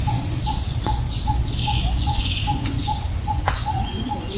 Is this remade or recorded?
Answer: remade